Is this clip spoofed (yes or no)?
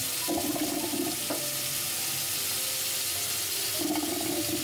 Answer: no